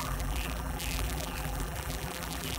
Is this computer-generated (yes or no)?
yes